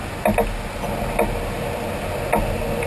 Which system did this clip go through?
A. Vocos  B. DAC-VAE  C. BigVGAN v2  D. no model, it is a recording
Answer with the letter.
D